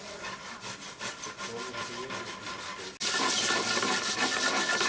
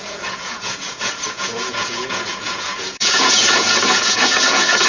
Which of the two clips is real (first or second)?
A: first